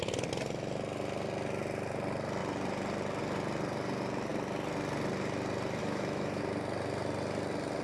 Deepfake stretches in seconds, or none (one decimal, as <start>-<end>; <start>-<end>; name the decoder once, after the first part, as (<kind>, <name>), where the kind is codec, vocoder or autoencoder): 5.8-6.4 (autoencoder, DAC-VAE)